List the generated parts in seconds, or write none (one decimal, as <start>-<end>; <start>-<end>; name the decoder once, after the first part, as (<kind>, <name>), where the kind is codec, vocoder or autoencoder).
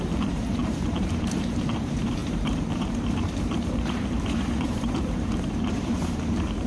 0.0-6.7 (vocoder, BigVGAN v2)